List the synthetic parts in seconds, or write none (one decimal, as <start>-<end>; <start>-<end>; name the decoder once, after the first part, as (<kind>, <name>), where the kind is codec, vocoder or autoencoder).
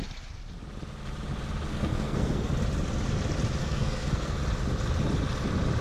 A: 1.7-2.5 (codec, SNAC); 3.6-4.4